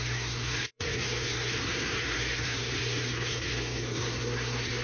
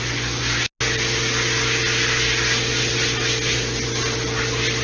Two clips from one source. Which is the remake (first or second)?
first